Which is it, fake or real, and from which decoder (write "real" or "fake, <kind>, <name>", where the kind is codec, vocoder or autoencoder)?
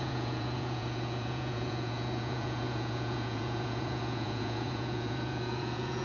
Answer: fake, vocoder, Vocos